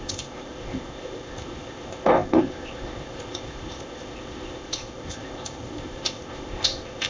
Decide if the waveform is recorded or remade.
remade